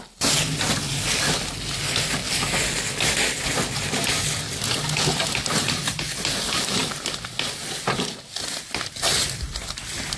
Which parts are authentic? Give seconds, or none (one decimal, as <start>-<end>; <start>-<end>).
0.0-10.2